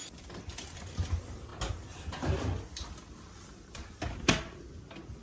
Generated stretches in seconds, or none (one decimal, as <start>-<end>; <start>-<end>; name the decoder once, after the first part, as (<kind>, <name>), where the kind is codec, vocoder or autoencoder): none